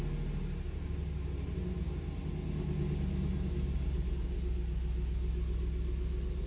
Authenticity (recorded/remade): recorded